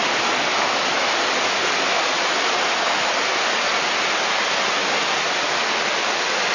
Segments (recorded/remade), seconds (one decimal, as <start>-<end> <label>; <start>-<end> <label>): 0.0-6.5 recorded